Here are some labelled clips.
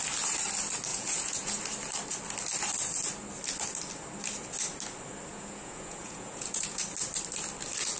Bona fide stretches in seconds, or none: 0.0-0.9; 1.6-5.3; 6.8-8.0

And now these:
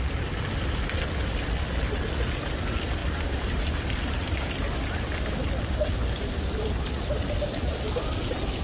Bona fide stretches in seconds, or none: 0.0-3.0; 4.7-8.6

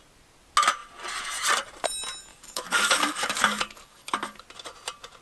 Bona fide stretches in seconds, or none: 0.0-2.3; 4.4-5.2

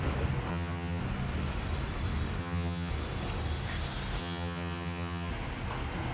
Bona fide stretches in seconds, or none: 0.0-0.5; 1.0-2.4; 2.9-4.2; 5.3-6.1

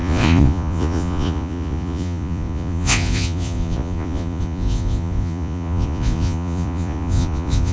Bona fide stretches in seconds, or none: none

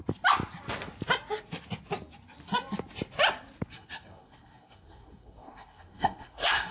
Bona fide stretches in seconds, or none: 0.0-3.7

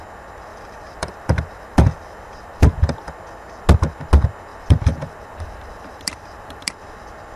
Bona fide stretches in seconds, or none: 0.0-0.5; 3.1-4.5; 6.7-7.4

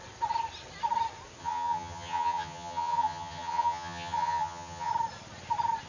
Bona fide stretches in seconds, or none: 0.0-1.4; 4.9-5.9